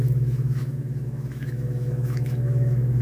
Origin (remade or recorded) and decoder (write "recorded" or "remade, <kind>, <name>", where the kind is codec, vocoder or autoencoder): remade, autoencoder, DAC-VAE